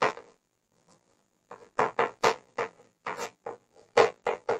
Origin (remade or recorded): remade